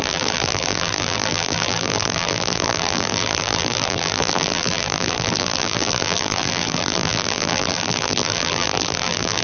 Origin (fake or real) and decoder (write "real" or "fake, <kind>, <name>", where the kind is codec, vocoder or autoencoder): fake, vocoder, BigVGAN v2